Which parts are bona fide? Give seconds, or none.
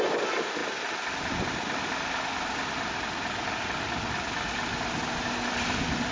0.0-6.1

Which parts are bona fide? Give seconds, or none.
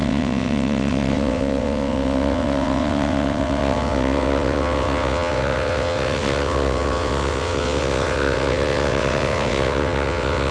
none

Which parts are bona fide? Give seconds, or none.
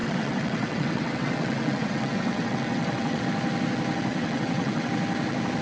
3.2-4.1; 4.9-5.6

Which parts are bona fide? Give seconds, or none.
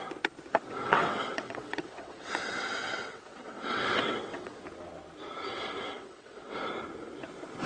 0.0-0.7; 4.6-5.5; 6.7-7.7